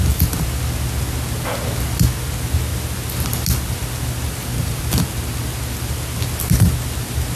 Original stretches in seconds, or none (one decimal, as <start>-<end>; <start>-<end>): 0.0-7.4